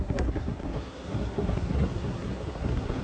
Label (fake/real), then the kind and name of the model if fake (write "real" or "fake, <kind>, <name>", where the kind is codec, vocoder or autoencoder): fake, codec, SNAC